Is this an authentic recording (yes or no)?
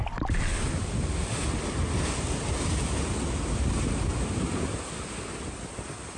yes